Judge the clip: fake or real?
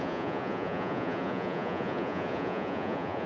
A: fake